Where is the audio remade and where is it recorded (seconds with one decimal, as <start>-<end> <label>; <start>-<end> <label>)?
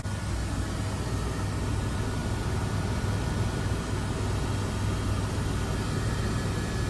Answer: 0.0-6.9 recorded